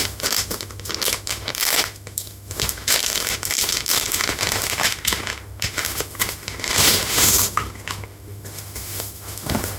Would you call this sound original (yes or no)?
no